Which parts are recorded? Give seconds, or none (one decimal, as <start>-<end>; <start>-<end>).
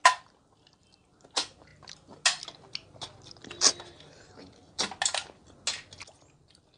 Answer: 0.0-6.8